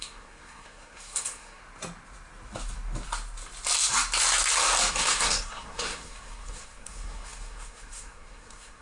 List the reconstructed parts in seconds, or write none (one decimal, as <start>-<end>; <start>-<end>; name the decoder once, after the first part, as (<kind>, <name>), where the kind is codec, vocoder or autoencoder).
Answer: 0.0-1.6 (codec, SNAC); 4.9-8.8